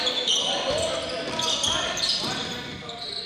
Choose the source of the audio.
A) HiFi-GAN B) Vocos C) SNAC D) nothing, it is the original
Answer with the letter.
D